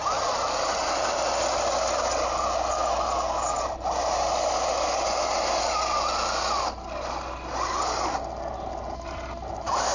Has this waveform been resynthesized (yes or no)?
no